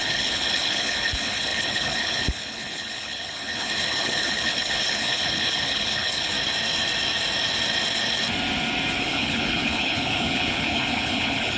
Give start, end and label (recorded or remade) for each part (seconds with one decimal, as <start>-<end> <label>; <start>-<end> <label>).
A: 0.0-6.3 remade; 6.3-9.0 recorded; 9.0-11.6 remade